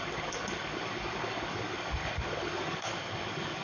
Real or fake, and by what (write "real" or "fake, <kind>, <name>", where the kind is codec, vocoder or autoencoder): fake, codec, DAC